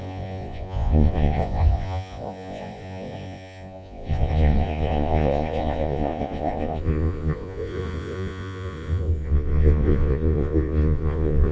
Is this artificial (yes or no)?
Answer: yes